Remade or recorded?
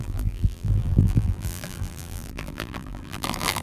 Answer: remade